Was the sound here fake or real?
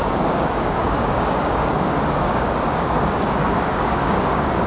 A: fake